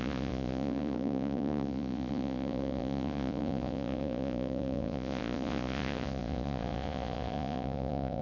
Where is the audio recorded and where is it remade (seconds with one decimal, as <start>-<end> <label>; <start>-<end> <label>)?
0.0-8.2 remade

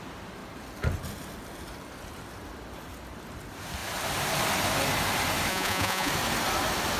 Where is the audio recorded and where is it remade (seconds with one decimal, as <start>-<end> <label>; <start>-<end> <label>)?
0.0-5.5 recorded; 5.5-6.1 remade; 6.1-7.0 recorded

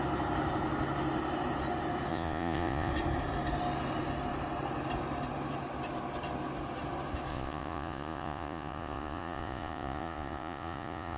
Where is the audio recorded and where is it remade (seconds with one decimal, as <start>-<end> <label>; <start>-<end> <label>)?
0.0-2.1 recorded; 2.1-2.9 remade; 2.9-7.3 recorded; 7.3-11.2 remade